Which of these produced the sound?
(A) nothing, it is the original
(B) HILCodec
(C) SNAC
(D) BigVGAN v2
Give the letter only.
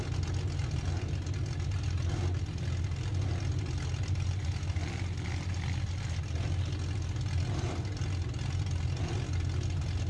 A